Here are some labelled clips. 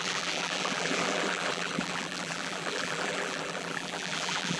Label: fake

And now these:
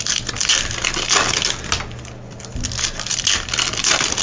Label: real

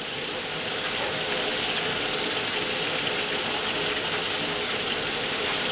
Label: real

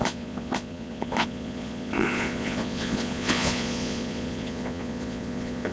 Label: fake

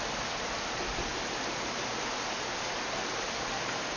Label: real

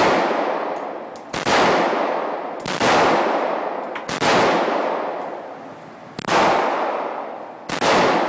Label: real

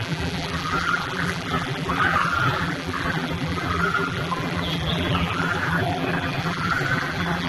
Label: fake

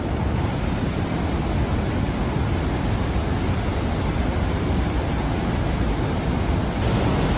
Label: real